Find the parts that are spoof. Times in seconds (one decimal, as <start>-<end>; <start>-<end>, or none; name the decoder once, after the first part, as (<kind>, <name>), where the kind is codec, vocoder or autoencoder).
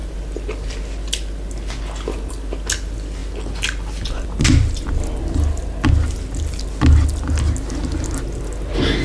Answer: none